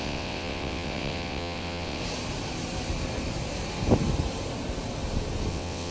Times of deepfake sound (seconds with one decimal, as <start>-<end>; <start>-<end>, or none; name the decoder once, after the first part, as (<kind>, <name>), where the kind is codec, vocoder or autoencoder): 0.0-2.0 (vocoder, WaveNeXt); 5.5-5.9